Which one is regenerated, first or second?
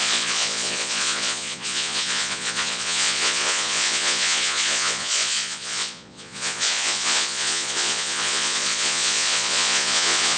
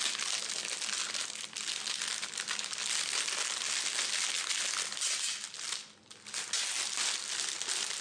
first